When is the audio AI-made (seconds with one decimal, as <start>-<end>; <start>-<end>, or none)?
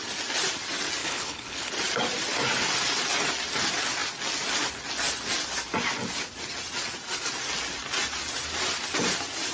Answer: 1.0-1.7